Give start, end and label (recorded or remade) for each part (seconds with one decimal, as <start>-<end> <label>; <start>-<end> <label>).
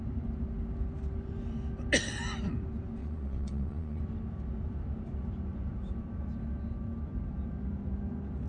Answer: 0.0-3.0 recorded; 3.0-4.0 remade; 4.0-8.5 recorded